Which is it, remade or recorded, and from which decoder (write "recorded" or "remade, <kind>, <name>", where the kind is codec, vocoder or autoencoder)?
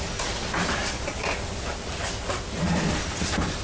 recorded